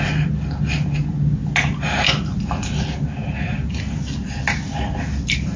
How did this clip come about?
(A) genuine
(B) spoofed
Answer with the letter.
A